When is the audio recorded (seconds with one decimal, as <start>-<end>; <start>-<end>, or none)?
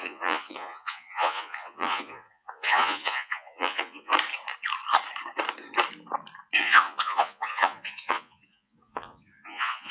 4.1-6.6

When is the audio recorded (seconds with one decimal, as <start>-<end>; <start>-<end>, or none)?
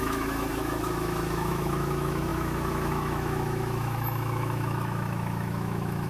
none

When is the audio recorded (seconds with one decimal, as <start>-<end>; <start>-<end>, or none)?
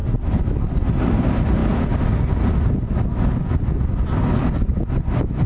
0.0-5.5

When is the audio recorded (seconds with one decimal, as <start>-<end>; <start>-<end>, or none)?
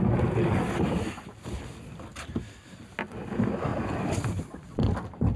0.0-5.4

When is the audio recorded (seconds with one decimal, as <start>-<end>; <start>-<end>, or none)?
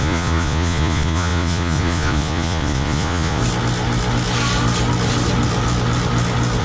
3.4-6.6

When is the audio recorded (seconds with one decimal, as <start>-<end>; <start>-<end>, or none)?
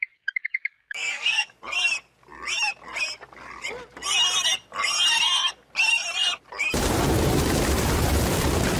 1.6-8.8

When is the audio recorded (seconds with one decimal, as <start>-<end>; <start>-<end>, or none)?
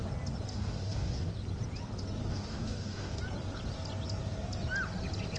0.0-0.5; 1.3-2.3; 3.2-5.4